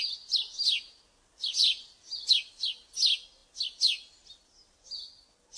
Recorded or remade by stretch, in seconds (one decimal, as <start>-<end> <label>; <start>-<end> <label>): 0.0-5.6 recorded